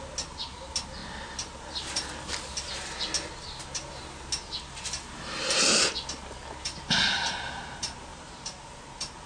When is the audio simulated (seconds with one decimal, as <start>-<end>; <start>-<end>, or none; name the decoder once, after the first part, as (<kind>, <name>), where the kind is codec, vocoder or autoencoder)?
8.1-8.8 (vocoder, BigVGAN v2)